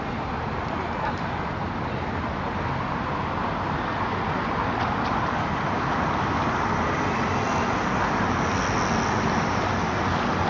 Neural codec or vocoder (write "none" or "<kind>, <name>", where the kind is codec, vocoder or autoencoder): none